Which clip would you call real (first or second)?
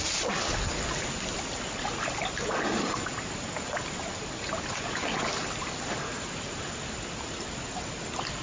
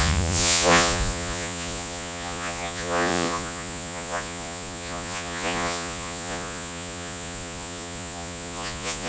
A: first